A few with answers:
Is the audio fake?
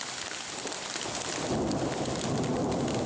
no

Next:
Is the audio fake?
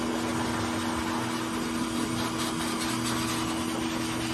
no